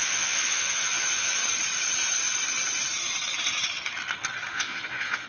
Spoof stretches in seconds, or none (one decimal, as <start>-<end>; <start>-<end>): 0.0-1.4; 4.5-5.3